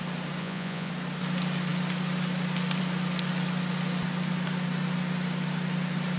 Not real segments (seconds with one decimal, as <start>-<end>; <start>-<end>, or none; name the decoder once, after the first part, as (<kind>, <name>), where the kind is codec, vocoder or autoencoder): 0.4-0.9 (vocoder, Vocos)